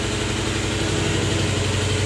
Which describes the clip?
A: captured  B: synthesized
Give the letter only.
A